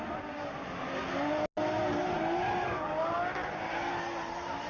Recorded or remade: recorded